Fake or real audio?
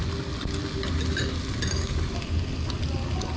real